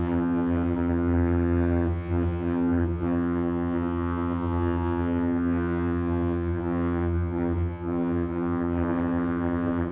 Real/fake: fake